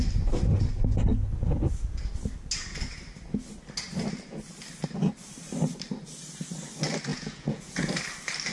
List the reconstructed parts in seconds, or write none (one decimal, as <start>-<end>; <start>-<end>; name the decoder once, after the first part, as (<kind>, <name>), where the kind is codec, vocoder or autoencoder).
7.1-7.9 (vocoder, Vocos)